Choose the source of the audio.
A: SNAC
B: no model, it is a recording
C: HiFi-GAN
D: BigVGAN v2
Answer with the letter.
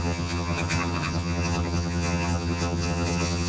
C